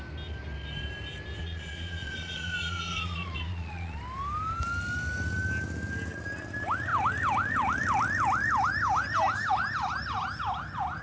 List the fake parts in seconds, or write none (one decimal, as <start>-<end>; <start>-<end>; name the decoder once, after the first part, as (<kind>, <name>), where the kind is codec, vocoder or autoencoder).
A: 1.4-4.0 (vocoder, Vocos)